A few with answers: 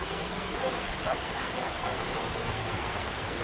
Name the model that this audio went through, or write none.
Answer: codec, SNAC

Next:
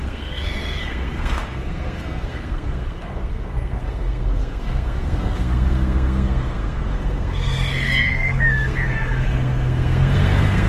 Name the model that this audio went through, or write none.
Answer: codec, SNAC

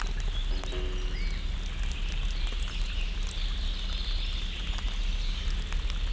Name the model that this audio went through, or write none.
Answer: none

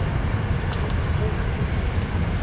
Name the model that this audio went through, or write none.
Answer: none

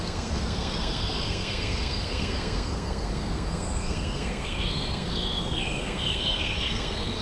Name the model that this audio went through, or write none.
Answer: codec, SNAC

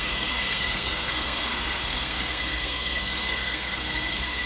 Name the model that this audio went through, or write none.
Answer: codec, SNAC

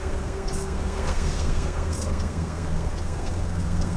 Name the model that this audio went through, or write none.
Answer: codec, SNAC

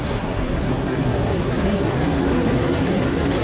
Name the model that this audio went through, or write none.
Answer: codec, SNAC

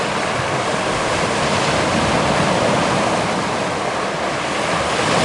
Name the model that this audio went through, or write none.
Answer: none